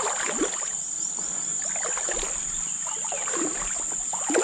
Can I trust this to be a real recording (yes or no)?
yes